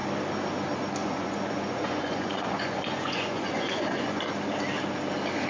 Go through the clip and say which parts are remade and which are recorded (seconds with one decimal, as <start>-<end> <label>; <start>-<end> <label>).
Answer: 0.0-1.0 recorded; 1.0-4.3 remade; 4.3-5.5 recorded